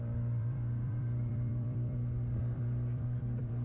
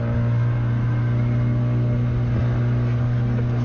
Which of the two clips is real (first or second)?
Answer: second